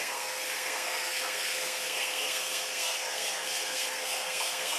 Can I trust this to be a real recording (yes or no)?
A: no